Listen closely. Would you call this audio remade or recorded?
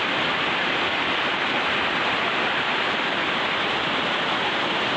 recorded